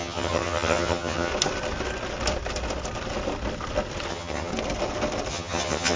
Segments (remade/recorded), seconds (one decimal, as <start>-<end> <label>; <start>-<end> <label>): 0.0-1.3 remade; 1.3-4.1 recorded; 4.1-4.5 remade; 4.5-5.3 recorded; 5.3-6.0 remade